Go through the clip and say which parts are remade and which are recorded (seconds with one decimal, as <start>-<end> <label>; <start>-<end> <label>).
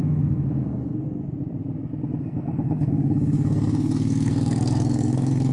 0.0-1.2 remade; 1.2-2.2 recorded; 2.2-5.5 remade